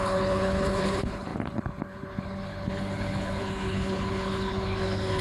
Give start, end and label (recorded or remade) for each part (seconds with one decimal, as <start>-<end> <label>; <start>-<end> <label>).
0.0-5.2 remade